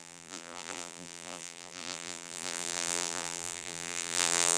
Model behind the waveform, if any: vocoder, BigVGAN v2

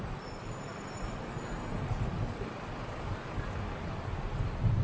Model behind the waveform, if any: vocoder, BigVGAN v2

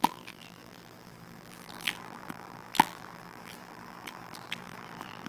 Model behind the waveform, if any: vocoder, BigVGAN v2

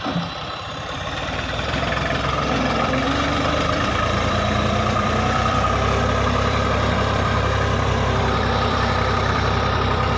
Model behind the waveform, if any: vocoder, BigVGAN v2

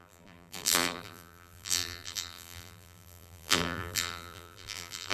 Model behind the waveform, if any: vocoder, BigVGAN v2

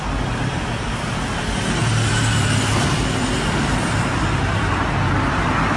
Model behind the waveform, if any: vocoder, BigVGAN v2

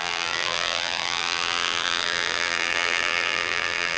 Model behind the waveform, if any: vocoder, BigVGAN v2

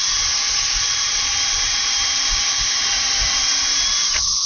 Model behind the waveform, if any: vocoder, BigVGAN v2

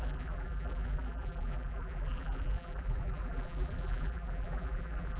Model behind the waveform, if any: vocoder, BigVGAN v2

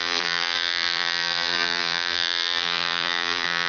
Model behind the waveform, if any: vocoder, BigVGAN v2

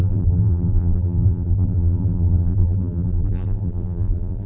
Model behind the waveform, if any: vocoder, BigVGAN v2